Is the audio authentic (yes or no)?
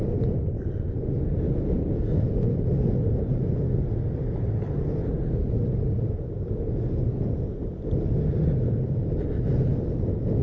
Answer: yes